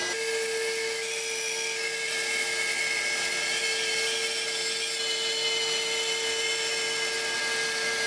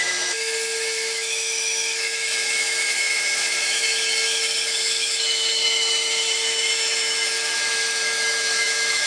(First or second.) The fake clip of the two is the second